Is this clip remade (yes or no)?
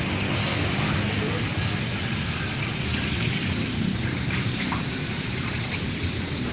yes